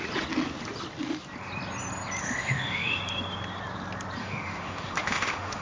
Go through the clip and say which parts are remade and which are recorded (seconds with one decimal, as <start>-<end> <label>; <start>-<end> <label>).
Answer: 0.0-2.2 recorded; 2.2-3.0 remade; 3.0-4.2 recorded; 4.2-5.6 remade

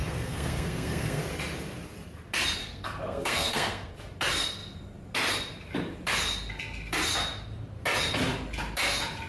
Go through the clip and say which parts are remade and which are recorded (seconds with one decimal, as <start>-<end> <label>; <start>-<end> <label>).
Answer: 0.0-1.2 remade; 1.2-2.6 recorded; 2.6-3.9 remade; 3.9-9.3 recorded

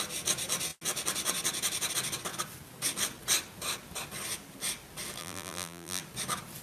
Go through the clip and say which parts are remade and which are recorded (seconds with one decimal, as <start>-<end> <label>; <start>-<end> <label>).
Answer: 0.0-5.2 recorded; 5.2-6.0 remade; 6.0-6.6 recorded

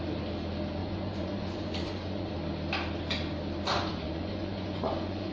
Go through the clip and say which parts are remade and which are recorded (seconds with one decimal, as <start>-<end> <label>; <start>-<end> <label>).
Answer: 0.0-0.8 recorded; 0.8-2.3 remade; 2.3-3.8 recorded; 3.8-5.3 remade

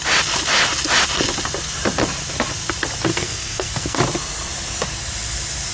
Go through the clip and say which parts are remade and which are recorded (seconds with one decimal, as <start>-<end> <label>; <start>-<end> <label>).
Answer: 0.0-3.1 recorded; 3.1-4.0 remade; 4.0-5.7 recorded

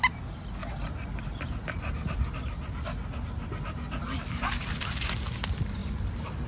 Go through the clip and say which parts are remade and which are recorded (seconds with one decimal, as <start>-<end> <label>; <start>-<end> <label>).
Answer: 0.0-6.5 recorded